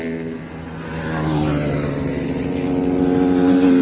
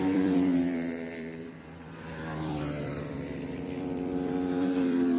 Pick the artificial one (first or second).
second